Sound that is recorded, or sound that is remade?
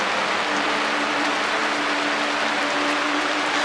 recorded